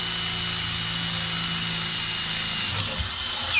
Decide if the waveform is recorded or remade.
recorded